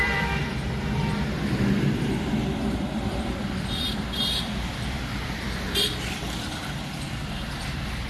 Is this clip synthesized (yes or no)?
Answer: yes